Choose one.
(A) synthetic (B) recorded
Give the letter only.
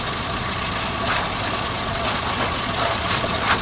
A